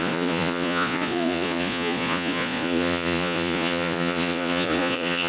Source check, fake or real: fake